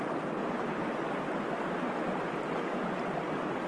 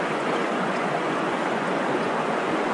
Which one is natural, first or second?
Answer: first